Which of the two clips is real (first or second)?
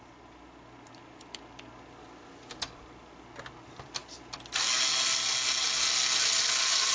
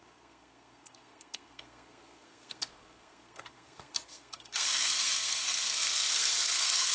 first